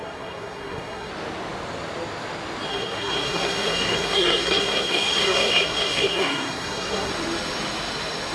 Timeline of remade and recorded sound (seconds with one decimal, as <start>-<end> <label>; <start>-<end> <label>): 0.0-1.1 remade; 1.1-2.7 recorded; 2.7-7.1 remade; 7.1-8.3 recorded